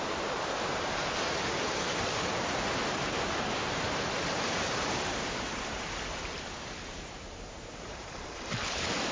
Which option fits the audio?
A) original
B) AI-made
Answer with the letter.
B